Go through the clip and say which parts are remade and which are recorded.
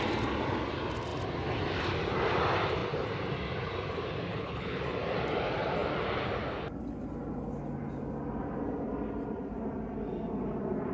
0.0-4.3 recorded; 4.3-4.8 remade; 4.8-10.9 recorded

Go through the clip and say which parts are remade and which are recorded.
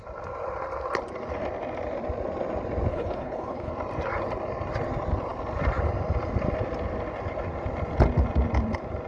0.0-2.9 recorded; 2.9-3.7 remade; 3.7-9.1 recorded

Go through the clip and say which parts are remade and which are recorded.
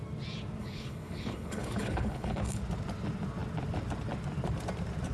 0.0-0.6 recorded; 0.6-2.6 remade; 2.6-5.1 recorded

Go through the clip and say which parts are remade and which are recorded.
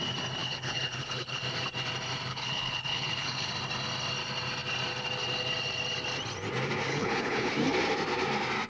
0.0-0.4 recorded; 0.4-1.4 remade; 1.4-2.3 recorded; 2.3-3.5 remade; 3.5-6.9 recorded; 6.9-7.5 remade; 7.5-8.7 recorded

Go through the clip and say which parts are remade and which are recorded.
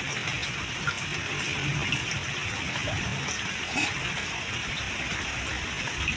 0.0-6.2 recorded